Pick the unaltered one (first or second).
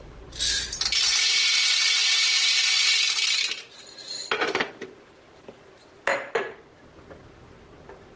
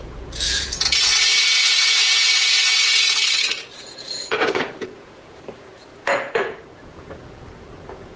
first